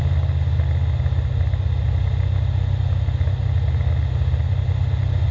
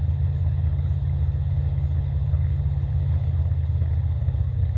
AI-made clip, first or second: second